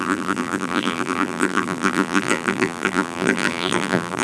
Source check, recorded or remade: remade